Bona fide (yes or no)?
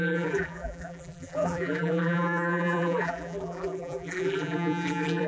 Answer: no